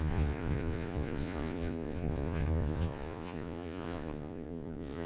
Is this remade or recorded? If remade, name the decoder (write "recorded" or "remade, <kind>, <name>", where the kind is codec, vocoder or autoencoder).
remade, vocoder, Vocos